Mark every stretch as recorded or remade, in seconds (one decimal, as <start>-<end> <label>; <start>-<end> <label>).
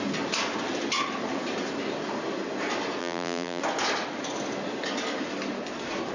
0.0-3.0 recorded; 3.0-3.6 remade; 3.6-6.1 recorded